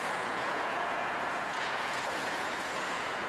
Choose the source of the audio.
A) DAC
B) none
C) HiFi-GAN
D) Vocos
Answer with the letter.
D